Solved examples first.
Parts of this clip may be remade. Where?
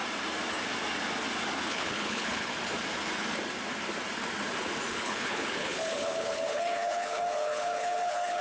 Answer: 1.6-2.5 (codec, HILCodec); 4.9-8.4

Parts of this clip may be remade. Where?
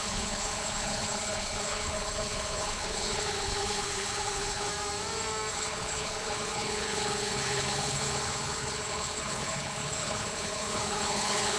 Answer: 0.0-4.7 (codec, HILCodec); 5.5-11.6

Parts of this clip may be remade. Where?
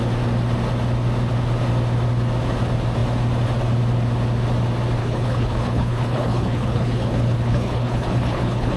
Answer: 5.0-8.8 (codec, HILCodec)